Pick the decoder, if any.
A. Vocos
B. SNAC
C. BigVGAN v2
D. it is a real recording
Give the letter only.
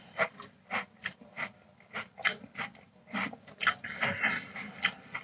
D